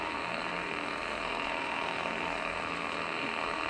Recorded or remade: remade